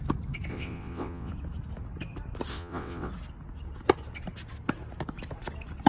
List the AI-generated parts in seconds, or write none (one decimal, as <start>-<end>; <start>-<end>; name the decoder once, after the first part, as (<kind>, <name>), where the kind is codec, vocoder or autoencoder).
0.5-1.3 (vocoder, WaveNeXt); 2.5-3.1